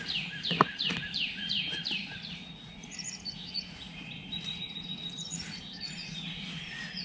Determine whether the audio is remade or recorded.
remade